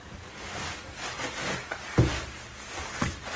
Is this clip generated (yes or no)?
no